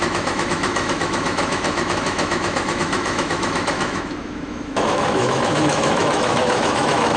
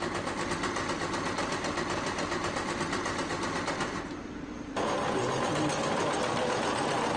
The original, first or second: second